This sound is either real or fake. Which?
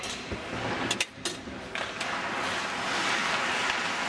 real